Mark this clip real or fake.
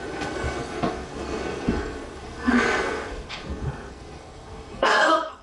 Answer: fake